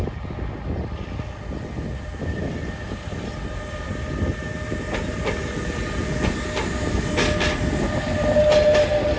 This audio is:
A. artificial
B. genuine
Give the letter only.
B